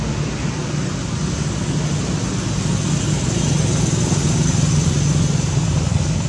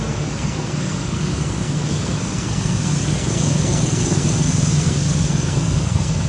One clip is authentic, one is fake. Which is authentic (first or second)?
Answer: first